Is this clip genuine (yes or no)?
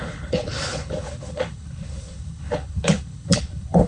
no